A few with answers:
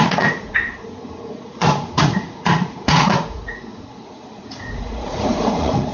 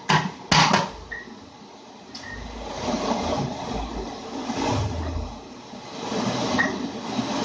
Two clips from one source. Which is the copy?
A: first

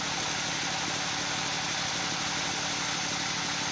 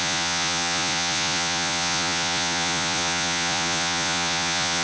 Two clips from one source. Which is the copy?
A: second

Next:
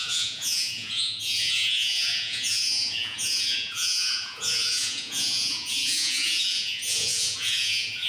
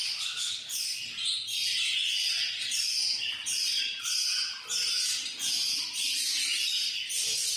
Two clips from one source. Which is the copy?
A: first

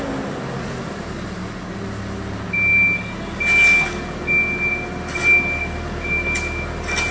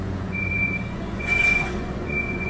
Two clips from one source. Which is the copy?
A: second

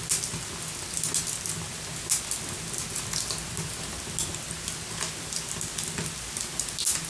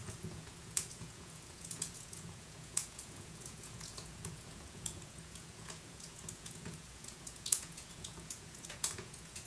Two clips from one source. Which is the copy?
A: second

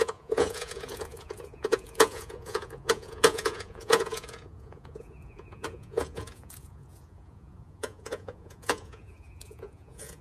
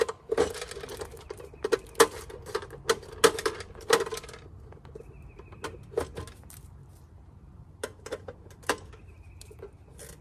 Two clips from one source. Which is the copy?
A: first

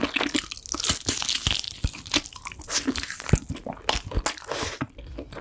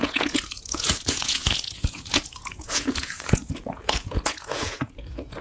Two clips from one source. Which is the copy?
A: second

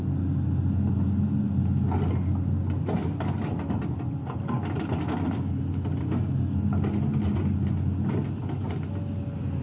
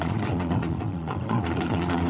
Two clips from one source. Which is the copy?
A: second